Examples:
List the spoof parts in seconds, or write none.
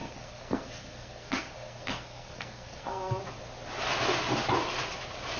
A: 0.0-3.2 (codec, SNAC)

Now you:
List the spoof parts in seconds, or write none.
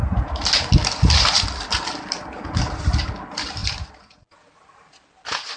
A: none